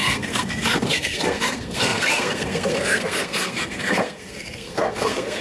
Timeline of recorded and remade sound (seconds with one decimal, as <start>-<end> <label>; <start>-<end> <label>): 0.0-5.4 remade